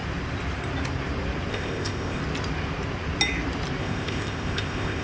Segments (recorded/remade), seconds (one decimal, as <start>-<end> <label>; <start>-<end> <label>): 0.0-1.5 recorded; 1.5-2.2 remade; 2.2-3.8 recorded; 3.8-5.0 remade

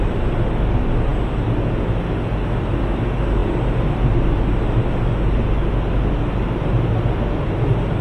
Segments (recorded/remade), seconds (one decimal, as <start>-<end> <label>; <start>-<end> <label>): 0.0-8.0 recorded

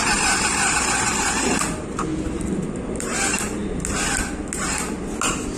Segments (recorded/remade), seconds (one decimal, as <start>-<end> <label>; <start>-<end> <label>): 0.0-2.1 remade; 2.1-2.9 recorded; 2.9-3.6 remade; 3.6-5.6 recorded

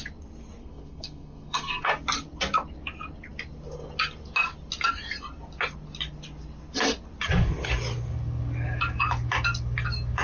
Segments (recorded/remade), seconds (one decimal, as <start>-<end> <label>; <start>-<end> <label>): 0.0-0.6 recorded; 0.6-1.9 remade; 1.9-10.2 recorded

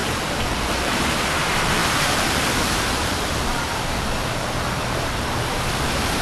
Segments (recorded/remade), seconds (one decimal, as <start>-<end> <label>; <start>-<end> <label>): 0.0-6.2 remade